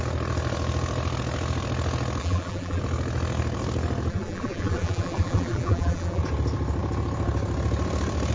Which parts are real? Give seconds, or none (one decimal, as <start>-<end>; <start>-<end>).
0.0-2.2; 2.8-4.1; 6.2-8.3

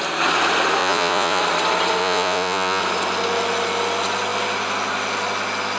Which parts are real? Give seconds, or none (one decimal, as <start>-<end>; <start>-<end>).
0.0-0.8; 1.4-2.0; 2.8-5.8

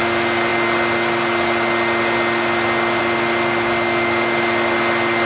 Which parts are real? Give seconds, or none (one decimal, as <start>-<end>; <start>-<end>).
0.0-5.3

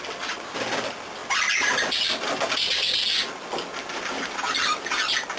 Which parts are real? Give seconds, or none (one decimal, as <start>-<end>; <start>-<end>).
0.0-5.4

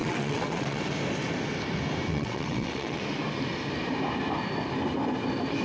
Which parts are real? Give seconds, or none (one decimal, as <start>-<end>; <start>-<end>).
0.8-2.1; 3.0-5.6